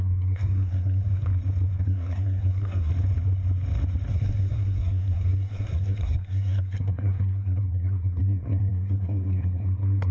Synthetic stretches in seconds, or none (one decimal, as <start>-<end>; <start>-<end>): 0.0-1.3; 1.8-2.9; 4.1-10.1